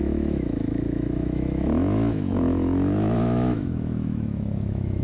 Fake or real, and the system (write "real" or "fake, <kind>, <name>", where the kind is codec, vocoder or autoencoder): fake, autoencoder, DAC-VAE